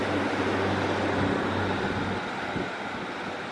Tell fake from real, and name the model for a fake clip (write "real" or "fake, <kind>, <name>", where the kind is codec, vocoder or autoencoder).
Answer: real